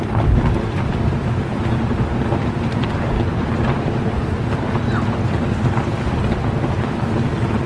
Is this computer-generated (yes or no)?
no